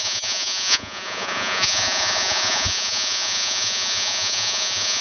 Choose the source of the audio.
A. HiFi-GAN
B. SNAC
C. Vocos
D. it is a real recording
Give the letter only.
C